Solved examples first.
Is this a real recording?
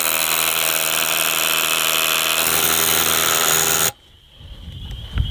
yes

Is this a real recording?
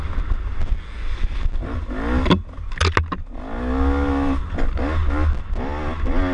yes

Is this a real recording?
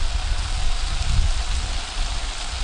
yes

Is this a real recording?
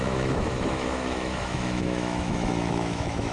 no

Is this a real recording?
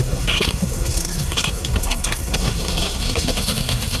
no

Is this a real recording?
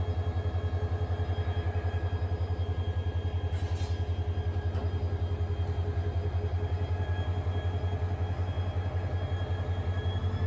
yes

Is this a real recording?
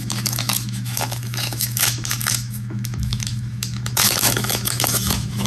no